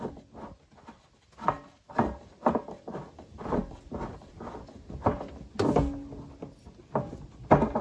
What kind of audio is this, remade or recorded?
recorded